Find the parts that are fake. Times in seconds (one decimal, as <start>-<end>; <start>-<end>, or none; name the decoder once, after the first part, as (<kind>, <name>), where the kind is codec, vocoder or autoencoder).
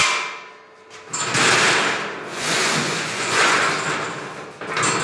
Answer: 2.3-3.7 (vocoder, Vocos)